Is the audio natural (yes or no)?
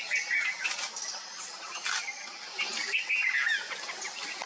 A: yes